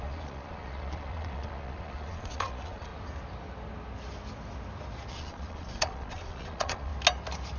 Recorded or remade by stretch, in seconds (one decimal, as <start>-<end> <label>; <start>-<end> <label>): 0.0-2.9 remade; 2.9-5.1 recorded; 5.1-6.9 remade; 6.9-7.6 recorded